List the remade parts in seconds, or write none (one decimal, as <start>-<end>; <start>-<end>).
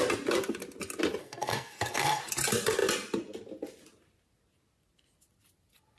1.2-2.2